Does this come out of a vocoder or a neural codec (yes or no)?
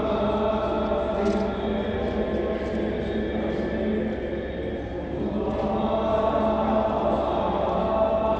no